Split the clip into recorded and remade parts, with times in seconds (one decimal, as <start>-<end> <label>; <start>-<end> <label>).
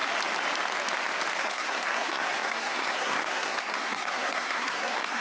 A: 0.0-1.4 recorded; 1.4-5.2 remade